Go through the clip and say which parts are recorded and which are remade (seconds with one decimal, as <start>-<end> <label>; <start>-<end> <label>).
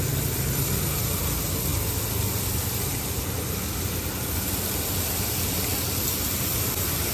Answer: 0.0-7.1 recorded